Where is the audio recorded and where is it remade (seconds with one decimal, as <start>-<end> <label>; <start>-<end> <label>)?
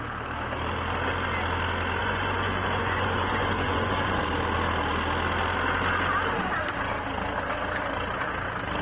0.0-2.0 recorded; 2.0-4.2 remade; 4.2-8.8 recorded